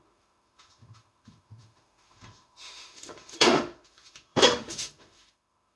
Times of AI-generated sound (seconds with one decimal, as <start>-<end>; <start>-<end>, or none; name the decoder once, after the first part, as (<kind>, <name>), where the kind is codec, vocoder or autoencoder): 0.0-5.8 (autoencoder, DAC-VAE)